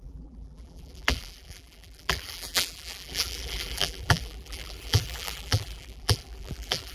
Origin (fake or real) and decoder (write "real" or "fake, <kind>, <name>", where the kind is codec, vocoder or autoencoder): fake, vocoder, BigVGAN v2